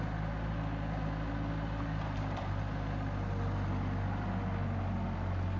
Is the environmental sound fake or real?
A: real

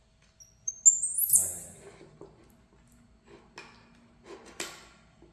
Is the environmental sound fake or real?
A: real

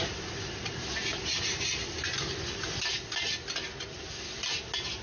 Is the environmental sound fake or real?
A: real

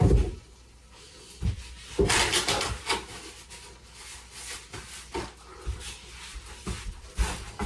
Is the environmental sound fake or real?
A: real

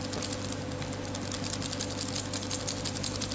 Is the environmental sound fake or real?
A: real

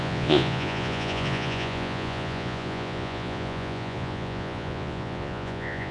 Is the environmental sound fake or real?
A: fake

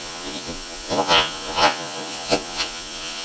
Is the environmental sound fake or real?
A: fake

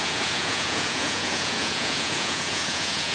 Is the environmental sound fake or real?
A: fake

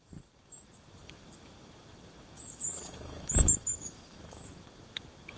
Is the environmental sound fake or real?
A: fake